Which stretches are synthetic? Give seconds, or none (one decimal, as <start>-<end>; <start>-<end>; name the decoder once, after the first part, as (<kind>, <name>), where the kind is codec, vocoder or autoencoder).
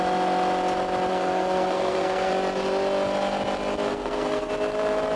1.1-2.3 (codec, SNAC); 3.9-4.5